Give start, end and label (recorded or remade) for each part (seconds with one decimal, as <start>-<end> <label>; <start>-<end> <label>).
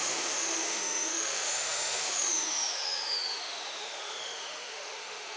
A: 0.0-5.4 remade